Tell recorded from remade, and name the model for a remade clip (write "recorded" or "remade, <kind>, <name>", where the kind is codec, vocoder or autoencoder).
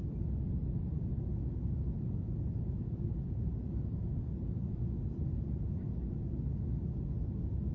recorded